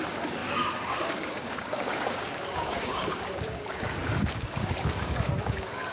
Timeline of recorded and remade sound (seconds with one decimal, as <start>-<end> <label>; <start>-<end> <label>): 0.0-5.9 remade

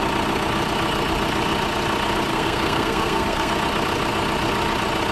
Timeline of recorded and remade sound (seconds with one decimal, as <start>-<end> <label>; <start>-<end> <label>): 0.0-2.3 recorded; 2.3-3.5 remade; 3.5-5.1 recorded

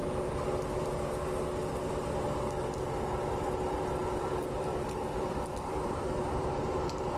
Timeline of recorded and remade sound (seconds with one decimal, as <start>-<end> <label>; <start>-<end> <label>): 0.0-4.0 recorded; 4.0-7.2 remade

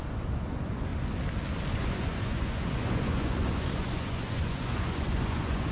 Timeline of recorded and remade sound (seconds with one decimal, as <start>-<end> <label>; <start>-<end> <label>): 0.0-0.9 remade; 0.9-1.7 recorded; 1.7-5.7 remade

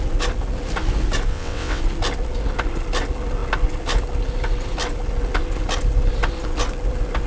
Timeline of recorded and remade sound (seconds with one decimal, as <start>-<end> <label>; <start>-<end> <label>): 0.0-1.3 recorded; 1.3-1.8 remade; 1.8-7.3 recorded

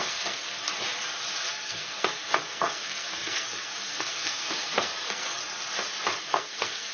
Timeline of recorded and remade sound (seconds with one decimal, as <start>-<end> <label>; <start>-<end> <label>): 0.0-0.7 remade; 0.7-1.5 recorded; 1.5-5.4 remade; 5.4-6.2 recorded; 6.2-6.9 remade

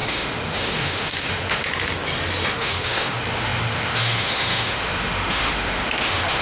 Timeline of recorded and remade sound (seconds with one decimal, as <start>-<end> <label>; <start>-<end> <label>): 0.0-1.6 remade; 1.6-2.5 recorded; 2.5-6.4 remade

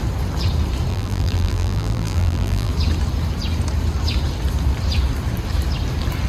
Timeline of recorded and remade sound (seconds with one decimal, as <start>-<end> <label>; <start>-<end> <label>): 0.0-0.9 recorded; 0.9-2.7 remade; 2.7-6.3 recorded